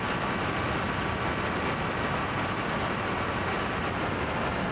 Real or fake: real